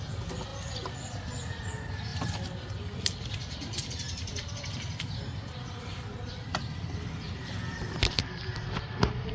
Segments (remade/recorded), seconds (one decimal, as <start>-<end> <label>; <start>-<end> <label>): 0.0-2.1 recorded; 2.1-5.2 remade; 5.2-5.9 recorded; 5.9-8.4 remade; 8.4-9.3 recorded